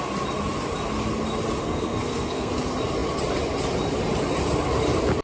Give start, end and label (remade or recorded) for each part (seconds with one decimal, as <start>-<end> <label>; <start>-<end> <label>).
0.0-1.6 recorded; 1.6-2.5 remade; 2.5-5.2 recorded